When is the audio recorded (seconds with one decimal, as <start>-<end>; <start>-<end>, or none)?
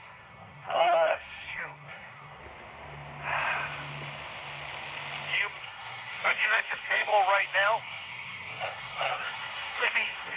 2.4-5.6; 7.1-7.8